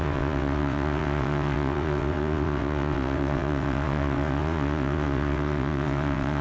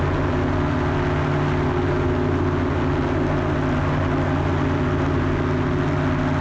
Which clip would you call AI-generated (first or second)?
first